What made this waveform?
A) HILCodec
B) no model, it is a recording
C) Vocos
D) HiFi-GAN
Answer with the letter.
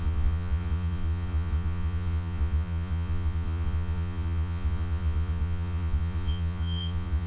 C